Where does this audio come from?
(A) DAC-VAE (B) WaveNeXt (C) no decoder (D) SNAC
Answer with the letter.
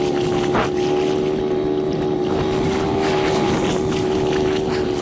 C